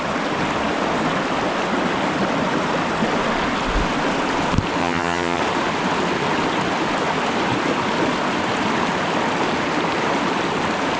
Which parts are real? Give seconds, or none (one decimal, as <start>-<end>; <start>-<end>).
0.0-4.8; 5.4-11.0